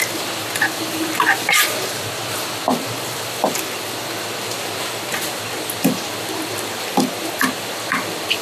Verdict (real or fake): real